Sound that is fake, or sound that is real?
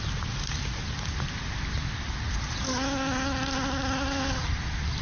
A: real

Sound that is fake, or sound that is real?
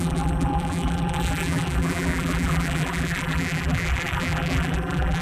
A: fake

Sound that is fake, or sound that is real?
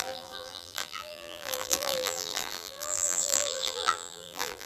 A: fake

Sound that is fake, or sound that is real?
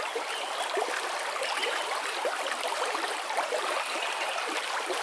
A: fake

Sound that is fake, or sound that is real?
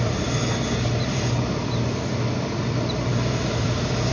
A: fake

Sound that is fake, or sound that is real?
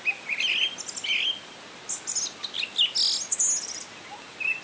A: real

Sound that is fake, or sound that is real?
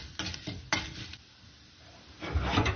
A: real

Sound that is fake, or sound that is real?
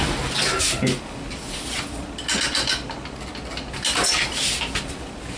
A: real